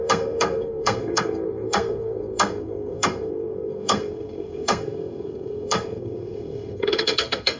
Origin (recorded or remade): remade